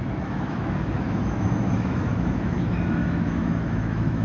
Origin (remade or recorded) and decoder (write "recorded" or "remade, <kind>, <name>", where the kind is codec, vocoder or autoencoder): remade, autoencoder, DAC-VAE